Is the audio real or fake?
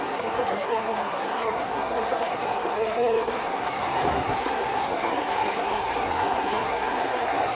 fake